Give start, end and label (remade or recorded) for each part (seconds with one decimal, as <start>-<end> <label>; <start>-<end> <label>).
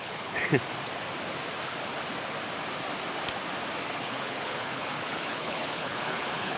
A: 0.0-0.5 remade; 0.5-3.9 recorded; 3.9-6.6 remade